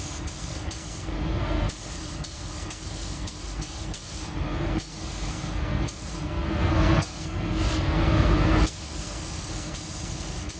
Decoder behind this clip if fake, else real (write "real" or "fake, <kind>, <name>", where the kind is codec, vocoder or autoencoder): fake, codec, SNAC